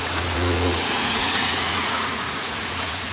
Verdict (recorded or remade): remade